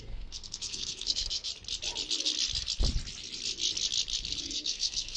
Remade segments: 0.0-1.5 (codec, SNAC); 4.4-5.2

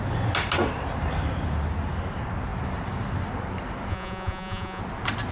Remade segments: 3.9-4.8 (vocoder, Vocos)